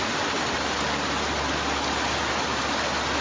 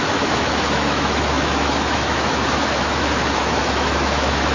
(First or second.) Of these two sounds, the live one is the first